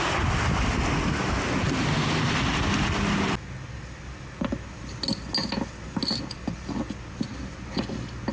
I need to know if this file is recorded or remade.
recorded